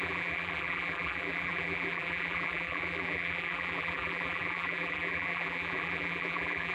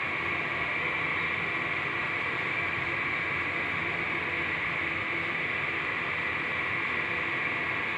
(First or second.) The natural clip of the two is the second